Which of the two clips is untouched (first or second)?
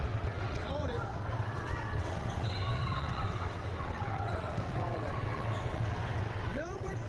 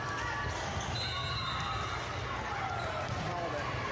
second